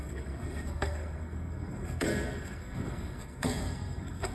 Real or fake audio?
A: fake